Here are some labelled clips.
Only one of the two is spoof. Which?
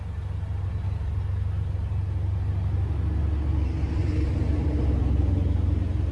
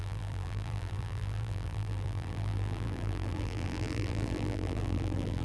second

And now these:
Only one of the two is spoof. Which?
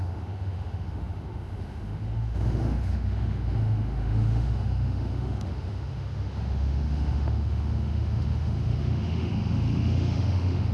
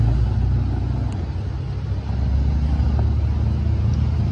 first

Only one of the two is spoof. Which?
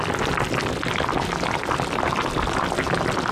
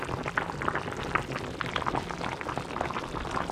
first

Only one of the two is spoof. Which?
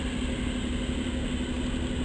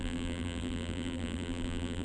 second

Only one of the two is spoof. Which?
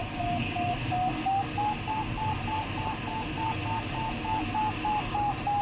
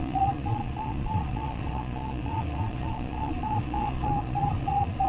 second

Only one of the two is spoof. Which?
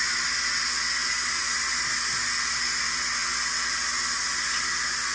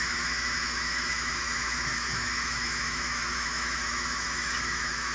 second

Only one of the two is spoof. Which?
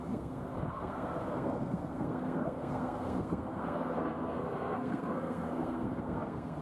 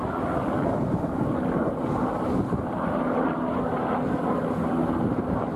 first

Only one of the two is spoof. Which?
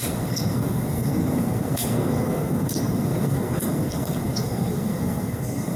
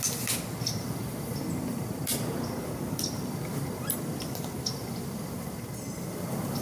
first